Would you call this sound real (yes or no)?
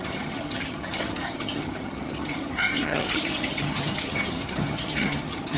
no